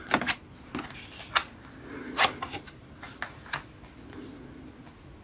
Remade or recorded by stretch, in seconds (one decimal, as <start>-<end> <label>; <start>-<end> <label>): 0.0-5.2 recorded